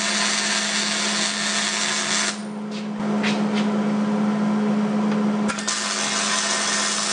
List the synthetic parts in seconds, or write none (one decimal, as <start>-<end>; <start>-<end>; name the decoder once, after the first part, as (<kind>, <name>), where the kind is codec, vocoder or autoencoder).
none